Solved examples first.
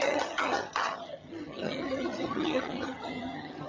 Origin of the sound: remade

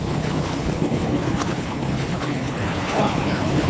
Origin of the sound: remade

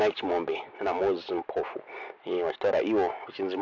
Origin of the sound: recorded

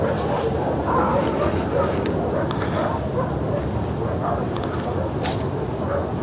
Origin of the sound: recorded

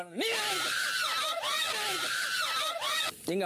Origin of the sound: recorded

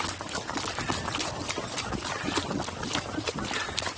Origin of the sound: recorded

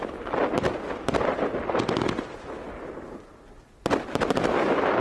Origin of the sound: recorded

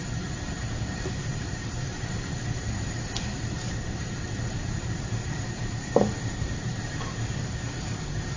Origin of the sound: remade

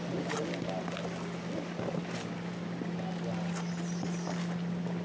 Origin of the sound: recorded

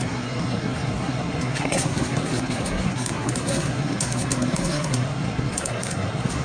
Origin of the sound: remade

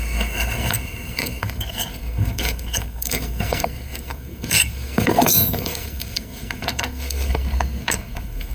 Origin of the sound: remade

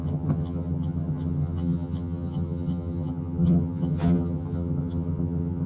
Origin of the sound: remade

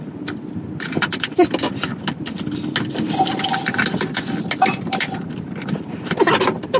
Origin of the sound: recorded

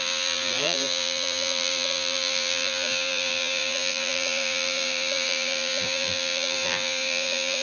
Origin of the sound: remade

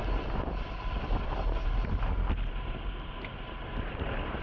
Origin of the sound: recorded